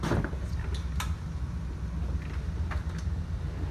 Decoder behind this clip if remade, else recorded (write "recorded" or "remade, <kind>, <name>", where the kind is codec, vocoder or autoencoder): recorded